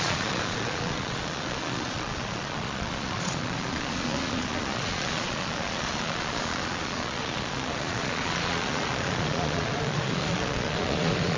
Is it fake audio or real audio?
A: fake